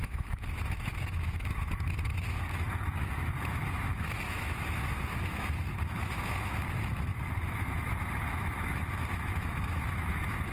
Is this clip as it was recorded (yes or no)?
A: no